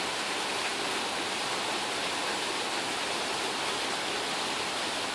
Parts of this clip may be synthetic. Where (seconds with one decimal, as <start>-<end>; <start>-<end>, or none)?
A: none